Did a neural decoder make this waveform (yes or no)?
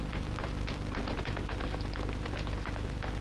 yes